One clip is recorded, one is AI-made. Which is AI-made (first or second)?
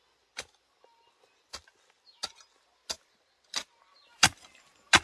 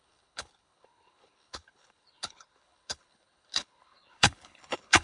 second